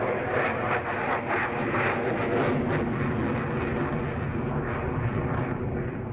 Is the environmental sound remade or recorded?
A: recorded